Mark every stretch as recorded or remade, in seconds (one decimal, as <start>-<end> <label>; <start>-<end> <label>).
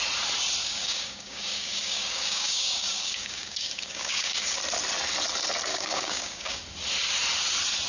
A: 0.0-0.6 recorded; 0.6-4.6 remade; 4.6-5.7 recorded; 5.7-6.6 remade; 6.6-7.9 recorded